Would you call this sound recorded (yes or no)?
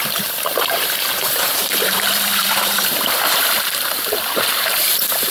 no